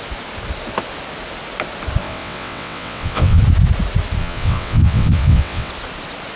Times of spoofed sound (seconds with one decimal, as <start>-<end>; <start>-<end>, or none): 2.0-3.4; 4.2-5.7